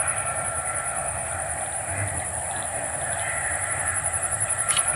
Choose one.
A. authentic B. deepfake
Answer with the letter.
B